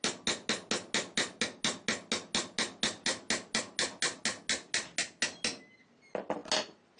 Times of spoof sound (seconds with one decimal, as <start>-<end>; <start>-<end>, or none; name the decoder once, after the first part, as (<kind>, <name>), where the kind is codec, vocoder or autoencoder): none